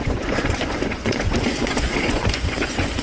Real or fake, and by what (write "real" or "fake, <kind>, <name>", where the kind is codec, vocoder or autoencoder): fake, vocoder, Vocos